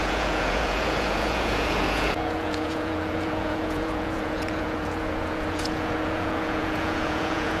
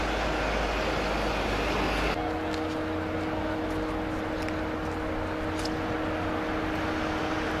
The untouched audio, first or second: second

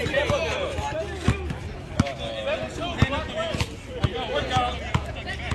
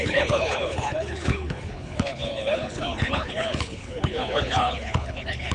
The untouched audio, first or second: first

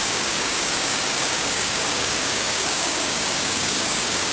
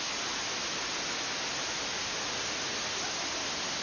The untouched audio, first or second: second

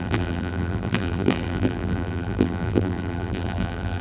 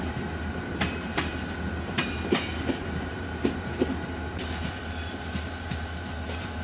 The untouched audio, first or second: second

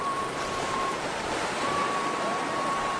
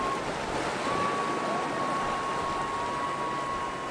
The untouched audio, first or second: second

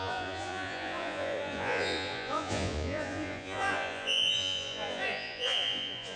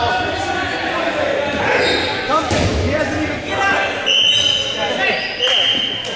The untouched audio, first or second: second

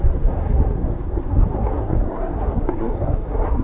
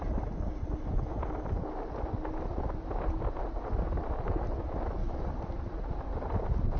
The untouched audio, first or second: second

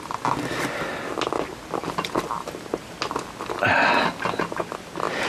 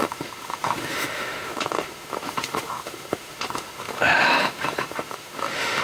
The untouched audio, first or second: first